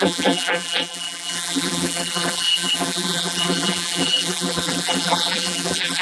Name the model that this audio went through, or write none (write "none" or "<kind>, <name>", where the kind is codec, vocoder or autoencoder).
vocoder, BigVGAN v2